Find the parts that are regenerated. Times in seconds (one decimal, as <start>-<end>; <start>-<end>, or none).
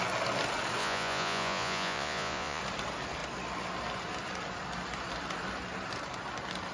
0.8-2.6